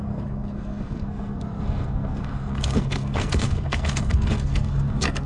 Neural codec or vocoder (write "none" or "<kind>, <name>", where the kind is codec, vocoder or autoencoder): codec, SNAC